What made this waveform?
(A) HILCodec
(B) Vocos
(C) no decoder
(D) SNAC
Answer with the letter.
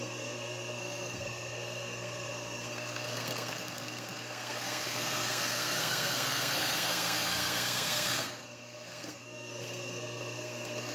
D